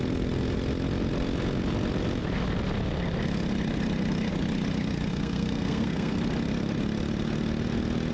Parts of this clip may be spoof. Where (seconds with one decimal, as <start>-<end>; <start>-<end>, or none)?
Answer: 5.1-6.1